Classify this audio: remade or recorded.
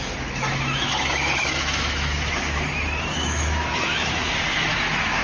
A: remade